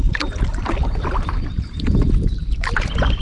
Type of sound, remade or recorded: recorded